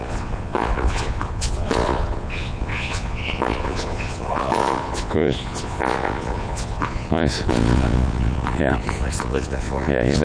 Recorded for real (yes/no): no